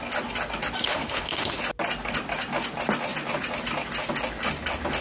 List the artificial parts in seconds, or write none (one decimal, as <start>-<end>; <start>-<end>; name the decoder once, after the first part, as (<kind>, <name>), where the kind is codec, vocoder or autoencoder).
0.9-1.6 (autoencoder, DAC-VAE)